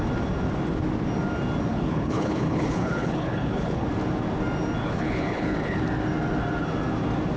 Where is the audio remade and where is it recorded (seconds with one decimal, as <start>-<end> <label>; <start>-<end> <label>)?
0.0-1.7 recorded; 1.7-3.9 remade; 3.9-4.8 recorded; 4.8-5.8 remade; 5.8-7.4 recorded